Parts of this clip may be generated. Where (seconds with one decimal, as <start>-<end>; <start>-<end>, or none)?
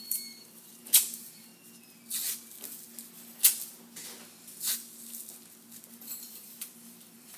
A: 0.0-1.5; 5.9-7.4